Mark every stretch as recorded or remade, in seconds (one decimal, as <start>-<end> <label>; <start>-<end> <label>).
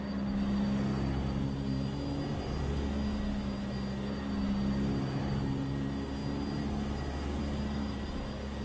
0.0-8.6 recorded